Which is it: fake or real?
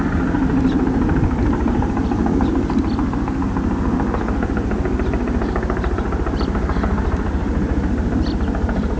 real